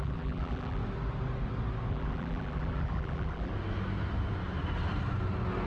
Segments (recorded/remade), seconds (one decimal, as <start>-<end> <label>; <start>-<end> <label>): 0.0-0.8 remade; 0.8-1.9 recorded; 1.9-3.5 remade; 3.5-5.7 recorded